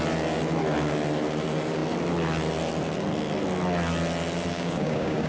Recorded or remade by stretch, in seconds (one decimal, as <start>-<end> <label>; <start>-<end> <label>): 0.0-4.5 recorded; 4.5-5.3 remade